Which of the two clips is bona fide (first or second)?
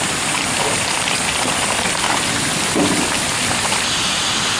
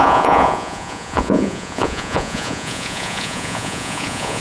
first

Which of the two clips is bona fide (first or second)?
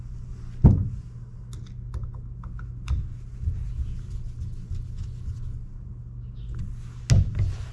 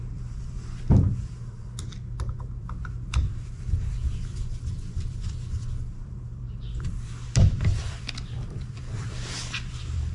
first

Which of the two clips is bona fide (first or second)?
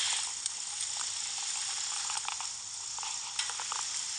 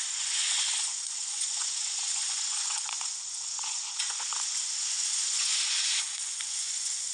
first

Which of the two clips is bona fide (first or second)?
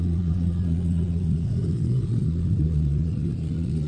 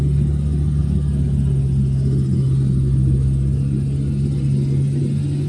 second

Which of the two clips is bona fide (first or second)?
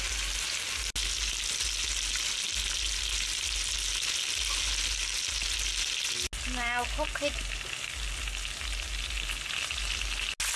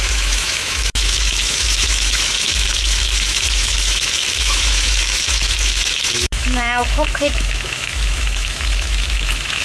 first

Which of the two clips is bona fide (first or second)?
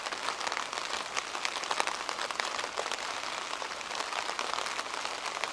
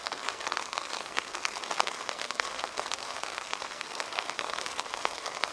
first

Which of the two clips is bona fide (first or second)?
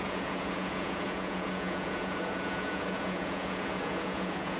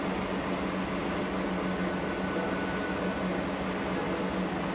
second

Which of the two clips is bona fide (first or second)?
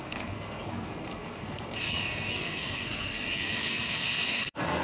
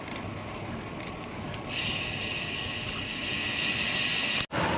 second